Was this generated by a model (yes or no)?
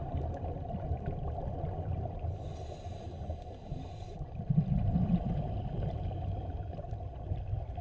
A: no